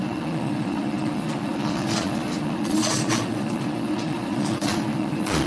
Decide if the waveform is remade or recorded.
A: remade